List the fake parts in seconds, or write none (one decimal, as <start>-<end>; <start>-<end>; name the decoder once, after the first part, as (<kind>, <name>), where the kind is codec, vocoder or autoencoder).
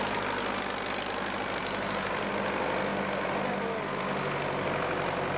1.6-2.3 (vocoder, BigVGAN v2)